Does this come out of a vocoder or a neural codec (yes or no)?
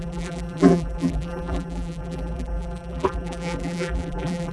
yes